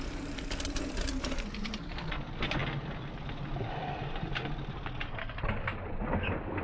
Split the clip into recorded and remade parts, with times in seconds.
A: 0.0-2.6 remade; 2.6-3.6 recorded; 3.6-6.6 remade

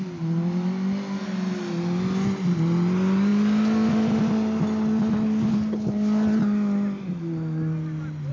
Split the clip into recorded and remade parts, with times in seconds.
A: 0.0-8.3 recorded

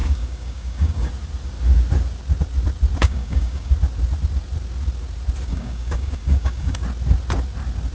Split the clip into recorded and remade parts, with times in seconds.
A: 0.0-1.1 remade; 1.1-3.0 recorded; 3.0-3.7 remade; 3.7-5.5 recorded; 5.5-6.8 remade; 6.8-7.9 recorded